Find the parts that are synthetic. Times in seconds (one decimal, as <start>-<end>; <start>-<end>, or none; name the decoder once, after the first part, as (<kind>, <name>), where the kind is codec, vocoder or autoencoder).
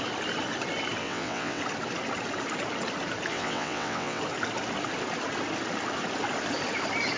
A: 1.0-1.6 (vocoder, WaveNeXt); 3.3-4.2